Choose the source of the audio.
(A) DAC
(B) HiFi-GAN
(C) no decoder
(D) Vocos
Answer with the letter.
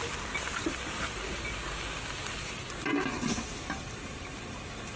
C